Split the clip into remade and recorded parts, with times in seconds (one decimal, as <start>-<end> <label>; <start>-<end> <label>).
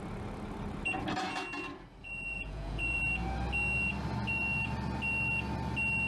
0.0-2.0 recorded; 2.0-3.0 remade; 3.0-6.1 recorded